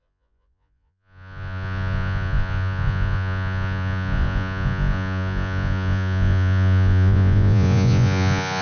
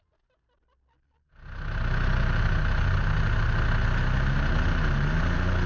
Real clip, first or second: second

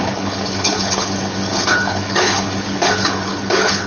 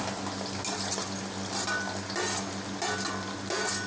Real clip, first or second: second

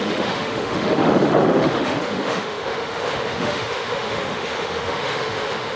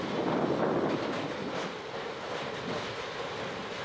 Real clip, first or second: second